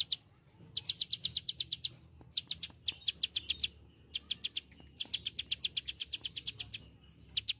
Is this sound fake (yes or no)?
no